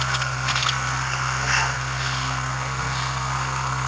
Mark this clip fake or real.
fake